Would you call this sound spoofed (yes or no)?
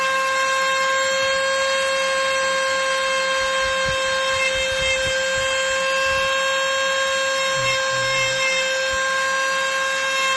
no